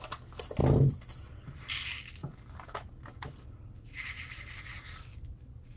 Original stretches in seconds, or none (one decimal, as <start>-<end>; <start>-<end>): 0.0-4.7